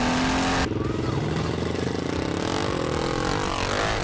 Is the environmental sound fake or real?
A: real